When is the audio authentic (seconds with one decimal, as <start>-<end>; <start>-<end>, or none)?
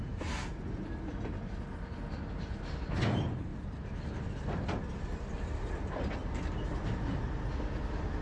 0.0-3.5; 4.8-6.2; 7.0-8.2